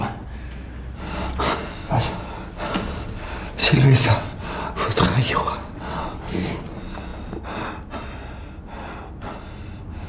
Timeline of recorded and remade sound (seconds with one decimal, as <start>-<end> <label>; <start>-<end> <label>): 0.0-3.6 recorded; 3.6-6.2 remade; 6.2-10.1 recorded